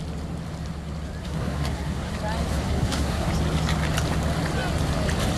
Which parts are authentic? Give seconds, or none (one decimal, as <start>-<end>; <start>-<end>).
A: 0.0-1.2; 2.1-2.5; 3.3-5.4